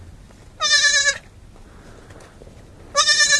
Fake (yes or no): no